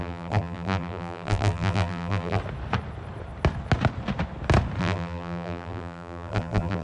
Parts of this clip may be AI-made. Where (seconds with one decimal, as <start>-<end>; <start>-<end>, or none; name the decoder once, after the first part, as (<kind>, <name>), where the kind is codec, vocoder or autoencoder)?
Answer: 0.0-2.4 (vocoder, BigVGAN v2); 4.8-6.8